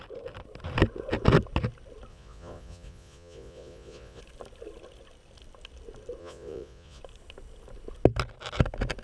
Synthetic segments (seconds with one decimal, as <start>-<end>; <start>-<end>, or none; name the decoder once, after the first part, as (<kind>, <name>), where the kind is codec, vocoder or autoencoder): 2.1-4.2 (vocoder, Vocos); 6.2-7.0